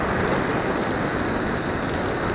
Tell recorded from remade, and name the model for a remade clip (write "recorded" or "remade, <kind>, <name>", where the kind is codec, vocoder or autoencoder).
recorded